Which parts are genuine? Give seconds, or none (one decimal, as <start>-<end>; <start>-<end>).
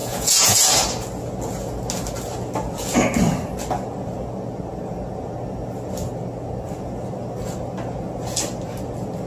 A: 0.7-9.3